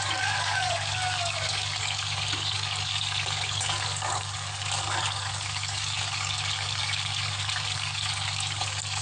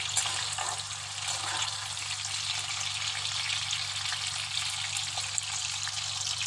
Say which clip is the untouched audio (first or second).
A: second